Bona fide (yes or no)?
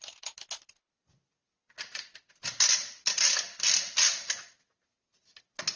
yes